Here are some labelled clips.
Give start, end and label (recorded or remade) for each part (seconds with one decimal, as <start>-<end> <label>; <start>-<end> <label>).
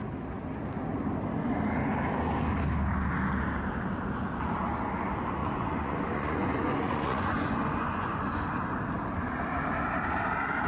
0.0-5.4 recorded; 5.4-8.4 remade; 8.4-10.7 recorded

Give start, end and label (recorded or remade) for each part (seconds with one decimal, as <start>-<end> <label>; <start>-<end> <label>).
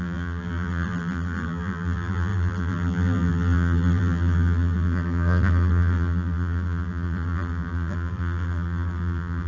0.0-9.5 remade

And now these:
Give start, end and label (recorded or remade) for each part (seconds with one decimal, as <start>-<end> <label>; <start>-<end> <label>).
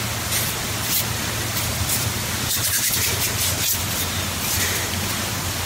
0.0-1.7 recorded; 1.7-4.0 remade; 4.0-5.7 recorded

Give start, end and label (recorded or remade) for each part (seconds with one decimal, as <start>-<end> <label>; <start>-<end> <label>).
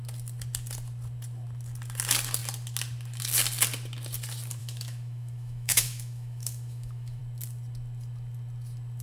0.0-4.6 recorded; 4.6-7.2 remade; 7.2-9.0 recorded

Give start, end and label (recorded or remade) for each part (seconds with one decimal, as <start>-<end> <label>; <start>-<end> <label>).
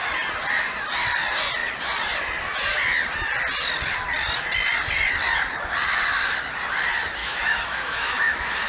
0.0-7.2 recorded; 7.2-8.7 remade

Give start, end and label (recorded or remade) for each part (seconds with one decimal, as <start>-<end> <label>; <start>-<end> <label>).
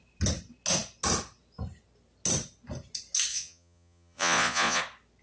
0.0-3.3 recorded; 3.3-4.8 remade; 4.8-5.2 recorded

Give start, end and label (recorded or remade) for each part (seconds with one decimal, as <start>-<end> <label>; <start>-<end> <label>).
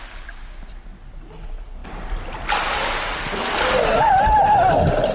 0.0-5.1 recorded